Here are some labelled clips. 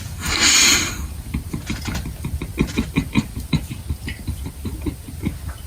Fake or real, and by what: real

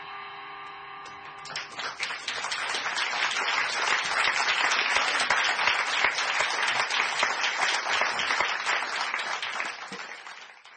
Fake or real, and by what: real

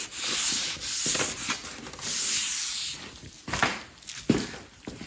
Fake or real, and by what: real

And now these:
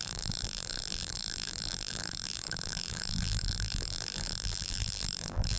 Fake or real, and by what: fake, vocoder, BigVGAN v2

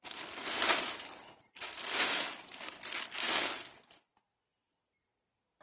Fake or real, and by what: real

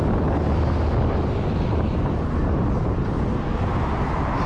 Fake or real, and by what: real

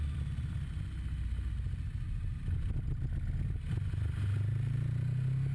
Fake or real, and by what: real